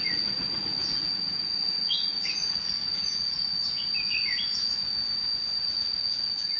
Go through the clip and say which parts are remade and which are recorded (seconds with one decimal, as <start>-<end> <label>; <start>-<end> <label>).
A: 0.0-3.5 remade; 3.5-5.6 recorded; 5.6-6.6 remade